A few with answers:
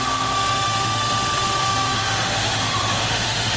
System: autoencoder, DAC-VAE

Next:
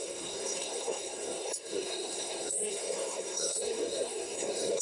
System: codec, SNAC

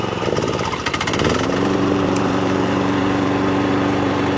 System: vocoder, BigVGAN v2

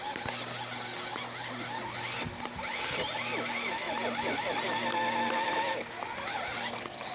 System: none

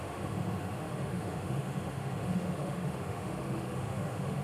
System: autoencoder, DAC-VAE